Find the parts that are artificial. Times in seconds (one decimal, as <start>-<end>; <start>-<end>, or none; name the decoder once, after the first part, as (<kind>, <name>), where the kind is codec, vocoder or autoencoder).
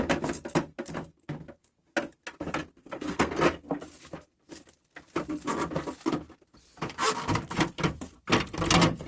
2.8-3.3 (codec, SNAC)